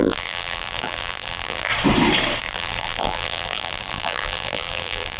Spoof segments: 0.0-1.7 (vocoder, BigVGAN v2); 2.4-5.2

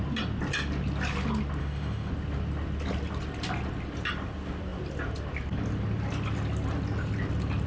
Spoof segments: 1.6-2.1 (autoencoder, DAC-VAE)